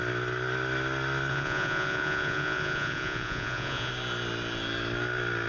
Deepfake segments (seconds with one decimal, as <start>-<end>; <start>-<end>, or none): 1.3-3.9